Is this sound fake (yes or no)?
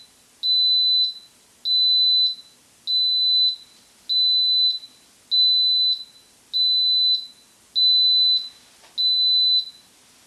no